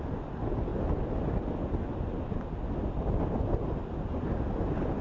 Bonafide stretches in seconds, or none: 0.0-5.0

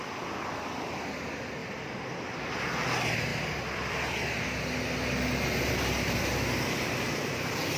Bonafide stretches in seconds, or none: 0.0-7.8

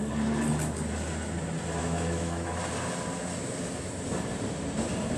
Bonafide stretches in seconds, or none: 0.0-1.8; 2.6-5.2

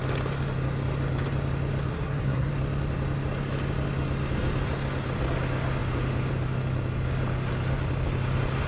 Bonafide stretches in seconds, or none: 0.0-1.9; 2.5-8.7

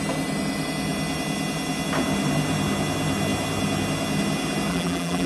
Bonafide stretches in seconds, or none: 0.0-4.7

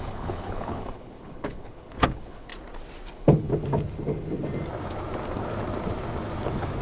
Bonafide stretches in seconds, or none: 2.5-3.1; 3.5-6.8